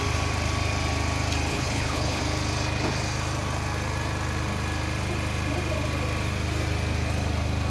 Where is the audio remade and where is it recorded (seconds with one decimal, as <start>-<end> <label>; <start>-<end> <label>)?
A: 0.0-1.5 recorded; 1.5-2.2 remade; 2.2-7.7 recorded